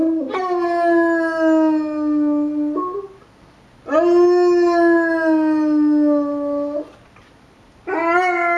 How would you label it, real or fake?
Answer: real